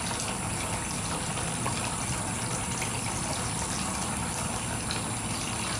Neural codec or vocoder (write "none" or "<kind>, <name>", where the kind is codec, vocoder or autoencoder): none